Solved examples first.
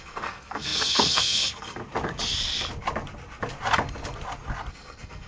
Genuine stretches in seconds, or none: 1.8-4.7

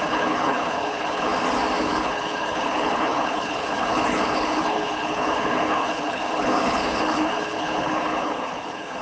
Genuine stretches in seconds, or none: 1.3-1.8